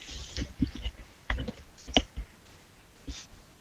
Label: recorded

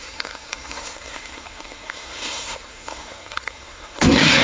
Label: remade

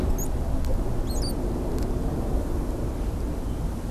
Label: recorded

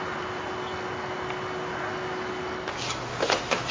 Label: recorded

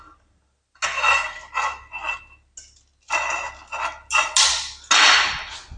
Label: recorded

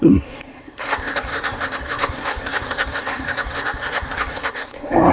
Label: remade